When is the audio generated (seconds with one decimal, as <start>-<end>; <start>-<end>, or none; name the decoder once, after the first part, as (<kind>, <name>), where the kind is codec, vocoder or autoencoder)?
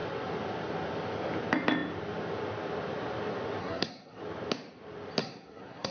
3.6-4.2 (codec, SNAC); 5.2-5.9